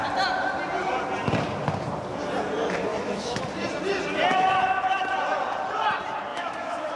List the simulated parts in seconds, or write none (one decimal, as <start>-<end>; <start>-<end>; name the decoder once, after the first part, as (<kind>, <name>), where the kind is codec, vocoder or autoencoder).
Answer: 2.9-3.4 (autoencoder, DAC-VAE); 4.3-5.0; 6.3-7.0